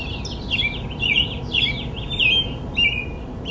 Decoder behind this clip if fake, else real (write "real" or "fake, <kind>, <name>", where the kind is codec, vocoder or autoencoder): real